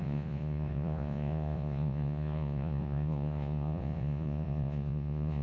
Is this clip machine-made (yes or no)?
yes